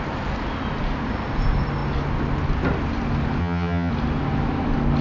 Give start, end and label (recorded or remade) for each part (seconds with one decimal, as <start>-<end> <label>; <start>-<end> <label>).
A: 0.0-3.4 recorded; 3.4-3.9 remade; 3.9-5.0 recorded